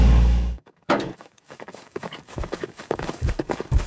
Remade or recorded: remade